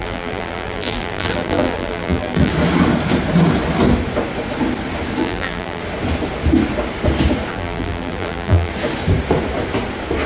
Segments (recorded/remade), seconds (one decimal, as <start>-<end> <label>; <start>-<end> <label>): 0.0-2.5 remade; 2.5-5.2 recorded; 5.2-5.8 remade; 5.8-7.5 recorded; 7.5-8.7 remade; 8.7-10.3 recorded